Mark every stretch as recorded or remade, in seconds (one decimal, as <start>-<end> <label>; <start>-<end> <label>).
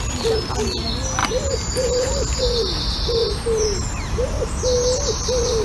0.0-1.2 recorded; 1.2-2.4 remade; 2.4-3.2 recorded; 3.2-4.6 remade; 4.6-5.6 recorded